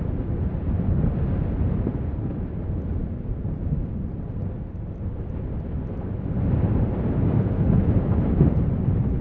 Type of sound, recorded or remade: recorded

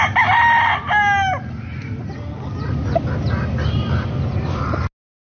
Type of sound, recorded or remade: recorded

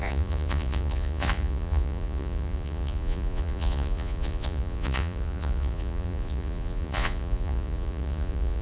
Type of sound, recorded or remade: remade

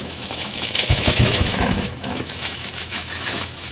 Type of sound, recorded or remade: remade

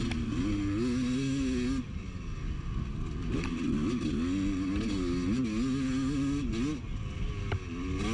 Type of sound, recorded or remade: recorded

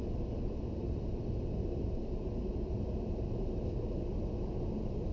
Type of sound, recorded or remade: recorded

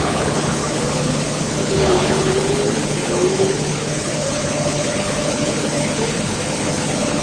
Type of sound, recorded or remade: remade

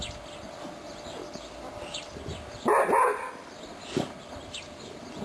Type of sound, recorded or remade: recorded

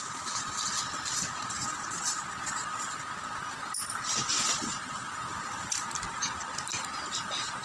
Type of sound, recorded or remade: recorded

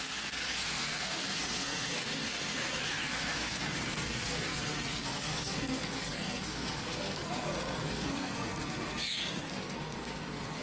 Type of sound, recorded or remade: remade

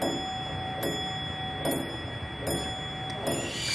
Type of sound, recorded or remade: recorded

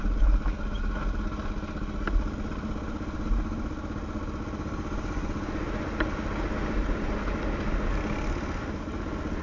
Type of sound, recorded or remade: recorded